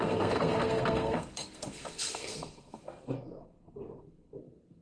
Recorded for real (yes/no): no